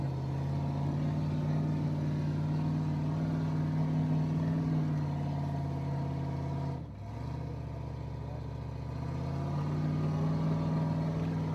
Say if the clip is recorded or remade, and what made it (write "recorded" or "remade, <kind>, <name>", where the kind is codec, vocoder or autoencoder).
recorded